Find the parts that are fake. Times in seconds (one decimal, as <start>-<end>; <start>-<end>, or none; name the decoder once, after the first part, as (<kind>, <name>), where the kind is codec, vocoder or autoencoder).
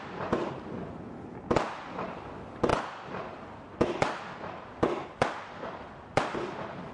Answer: 2.7-6.9 (vocoder, BigVGAN v2)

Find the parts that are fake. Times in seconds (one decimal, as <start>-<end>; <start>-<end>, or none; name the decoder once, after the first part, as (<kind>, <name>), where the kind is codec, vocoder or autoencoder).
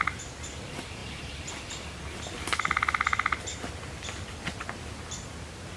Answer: 1.0-1.5 (vocoder, BigVGAN v2); 3.5-5.2